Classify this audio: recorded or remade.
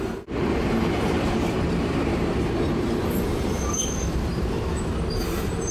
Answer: remade